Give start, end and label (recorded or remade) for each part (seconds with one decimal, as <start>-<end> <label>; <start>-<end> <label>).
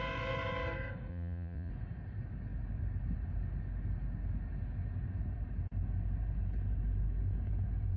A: 0.0-1.1 recorded; 1.1-1.7 remade; 1.7-8.0 recorded